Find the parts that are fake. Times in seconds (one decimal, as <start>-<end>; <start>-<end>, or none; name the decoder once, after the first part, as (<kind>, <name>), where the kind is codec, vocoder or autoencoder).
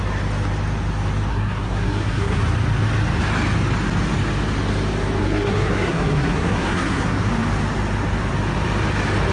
1.3-2.4 (codec, SNAC); 5.2-7.3